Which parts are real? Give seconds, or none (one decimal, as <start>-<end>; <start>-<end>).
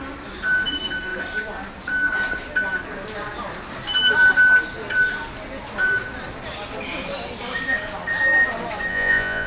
0.0-8.9